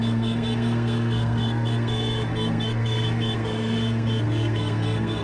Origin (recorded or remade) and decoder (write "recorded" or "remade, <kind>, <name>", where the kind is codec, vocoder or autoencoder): remade, codec, SNAC